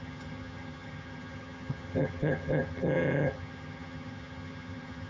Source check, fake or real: fake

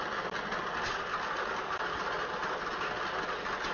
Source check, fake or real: real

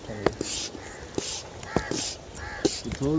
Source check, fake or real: real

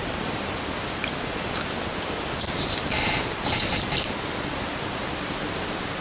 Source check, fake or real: real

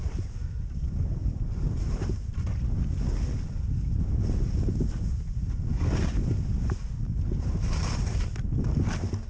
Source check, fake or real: real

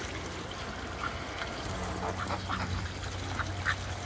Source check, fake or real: real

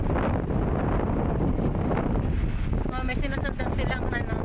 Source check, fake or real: real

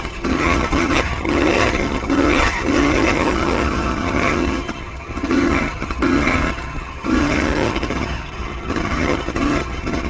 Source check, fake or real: fake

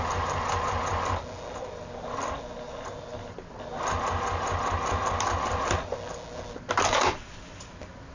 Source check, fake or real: real